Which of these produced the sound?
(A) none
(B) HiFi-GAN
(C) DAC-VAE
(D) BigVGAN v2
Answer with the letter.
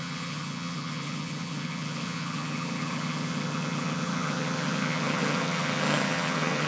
B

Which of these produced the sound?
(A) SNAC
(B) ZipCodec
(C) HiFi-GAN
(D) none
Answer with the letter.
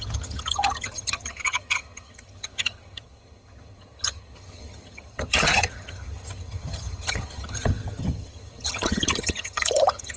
C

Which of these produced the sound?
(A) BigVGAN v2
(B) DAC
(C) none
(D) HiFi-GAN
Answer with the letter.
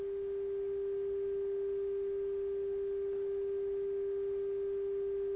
C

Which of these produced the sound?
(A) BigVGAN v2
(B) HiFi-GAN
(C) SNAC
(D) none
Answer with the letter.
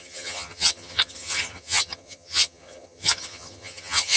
B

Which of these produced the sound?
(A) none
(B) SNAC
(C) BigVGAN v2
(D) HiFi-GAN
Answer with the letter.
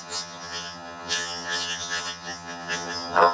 D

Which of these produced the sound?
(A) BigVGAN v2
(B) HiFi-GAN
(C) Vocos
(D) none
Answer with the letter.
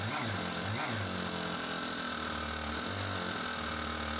D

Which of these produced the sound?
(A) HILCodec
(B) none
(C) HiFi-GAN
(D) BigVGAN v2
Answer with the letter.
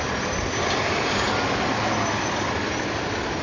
B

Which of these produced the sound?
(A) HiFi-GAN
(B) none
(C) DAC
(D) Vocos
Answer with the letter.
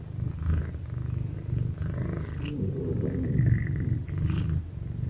B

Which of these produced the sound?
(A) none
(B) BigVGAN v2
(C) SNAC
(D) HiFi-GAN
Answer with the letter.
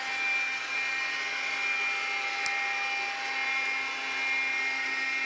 A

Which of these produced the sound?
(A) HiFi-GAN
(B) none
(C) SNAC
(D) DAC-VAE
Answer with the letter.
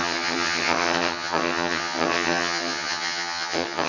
A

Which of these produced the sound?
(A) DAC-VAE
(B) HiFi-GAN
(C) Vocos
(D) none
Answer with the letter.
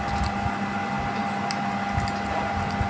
D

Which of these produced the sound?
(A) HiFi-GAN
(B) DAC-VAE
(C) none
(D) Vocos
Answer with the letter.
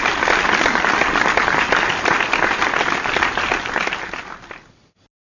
C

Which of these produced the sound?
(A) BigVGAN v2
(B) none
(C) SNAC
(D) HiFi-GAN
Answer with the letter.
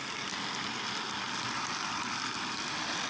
B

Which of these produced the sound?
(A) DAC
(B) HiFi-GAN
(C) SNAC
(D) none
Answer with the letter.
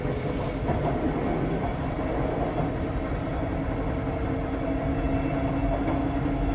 D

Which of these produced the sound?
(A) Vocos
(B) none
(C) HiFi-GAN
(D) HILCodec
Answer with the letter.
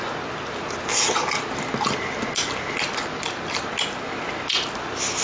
B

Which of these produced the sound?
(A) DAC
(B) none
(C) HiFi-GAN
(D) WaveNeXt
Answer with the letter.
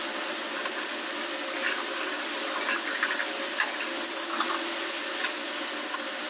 B